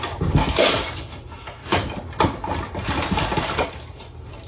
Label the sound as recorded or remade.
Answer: recorded